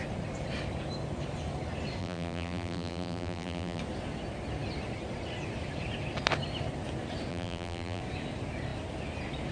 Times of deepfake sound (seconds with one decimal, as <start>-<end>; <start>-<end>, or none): 2.0-3.8; 7.3-8.0

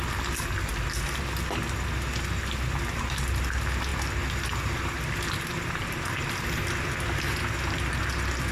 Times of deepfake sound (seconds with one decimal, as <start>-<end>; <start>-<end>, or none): none

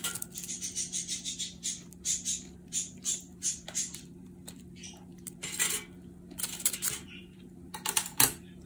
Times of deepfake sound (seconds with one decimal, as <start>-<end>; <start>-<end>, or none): 0.0-5.1; 6.4-8.7

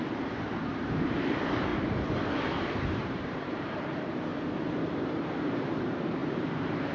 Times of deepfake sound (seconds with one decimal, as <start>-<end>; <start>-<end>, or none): 0.0-1.7; 2.8-4.3; 5.0-6.9

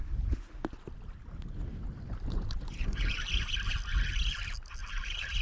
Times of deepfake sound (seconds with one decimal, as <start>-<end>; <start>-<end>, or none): 1.7-3.5; 4.8-5.4